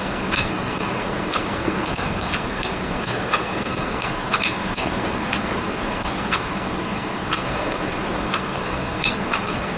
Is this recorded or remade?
remade